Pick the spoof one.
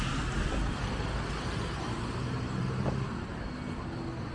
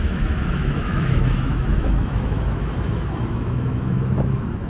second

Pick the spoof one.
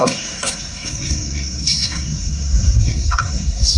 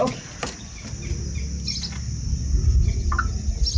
first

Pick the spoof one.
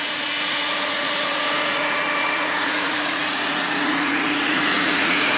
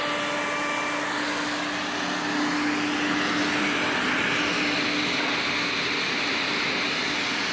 first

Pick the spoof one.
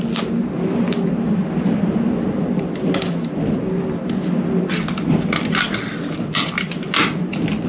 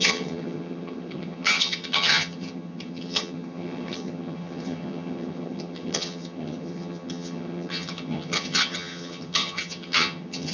second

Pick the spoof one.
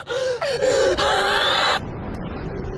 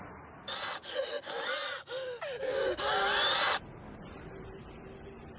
first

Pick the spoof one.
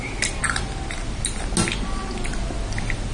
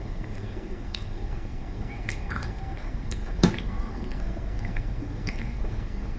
second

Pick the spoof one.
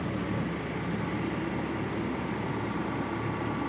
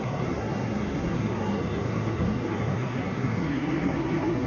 second